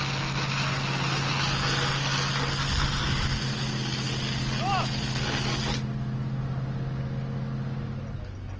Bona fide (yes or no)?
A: yes